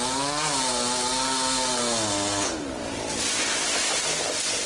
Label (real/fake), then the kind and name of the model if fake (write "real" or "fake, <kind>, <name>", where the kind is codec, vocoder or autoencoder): real